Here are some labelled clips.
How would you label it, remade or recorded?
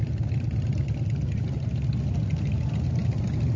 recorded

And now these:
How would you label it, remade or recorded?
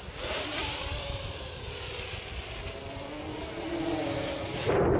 recorded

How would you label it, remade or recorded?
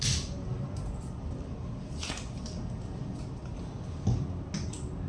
recorded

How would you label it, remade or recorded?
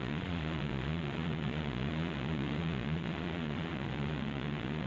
remade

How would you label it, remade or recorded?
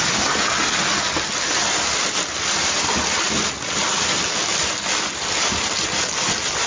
recorded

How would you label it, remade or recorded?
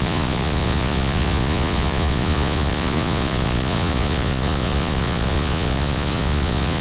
remade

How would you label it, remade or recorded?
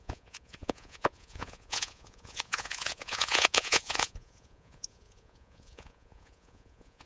remade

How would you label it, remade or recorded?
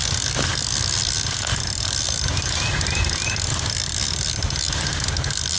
recorded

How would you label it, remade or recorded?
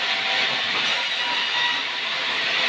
recorded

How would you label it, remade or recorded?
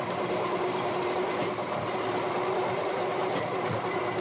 recorded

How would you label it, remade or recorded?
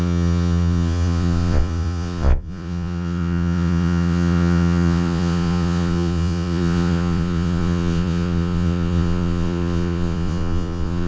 remade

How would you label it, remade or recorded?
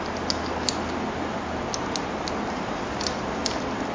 recorded